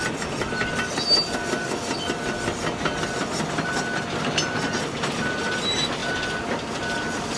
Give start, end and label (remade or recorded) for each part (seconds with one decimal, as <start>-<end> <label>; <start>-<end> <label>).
0.0-7.4 recorded